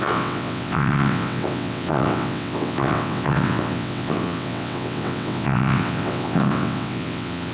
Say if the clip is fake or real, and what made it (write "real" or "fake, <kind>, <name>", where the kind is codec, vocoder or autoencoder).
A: fake, vocoder, WaveNeXt